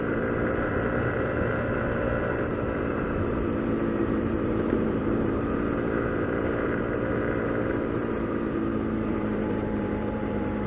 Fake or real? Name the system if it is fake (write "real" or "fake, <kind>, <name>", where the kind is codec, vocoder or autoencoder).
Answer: fake, vocoder, BigVGAN v2